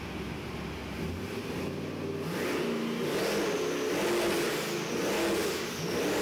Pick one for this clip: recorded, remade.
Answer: recorded